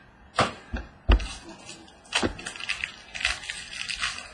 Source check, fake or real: real